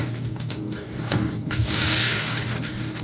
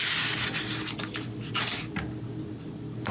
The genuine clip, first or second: second